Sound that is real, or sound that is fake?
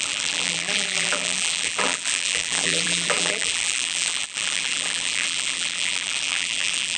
fake